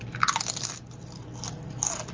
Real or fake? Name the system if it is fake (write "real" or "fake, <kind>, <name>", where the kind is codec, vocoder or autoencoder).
real